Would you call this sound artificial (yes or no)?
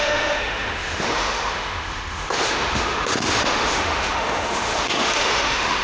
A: yes